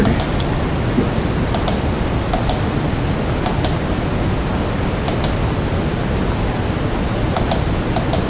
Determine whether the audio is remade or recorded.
recorded